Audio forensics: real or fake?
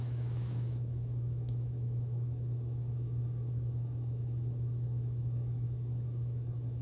fake